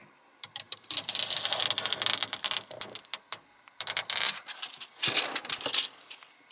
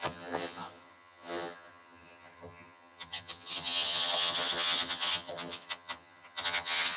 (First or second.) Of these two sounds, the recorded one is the first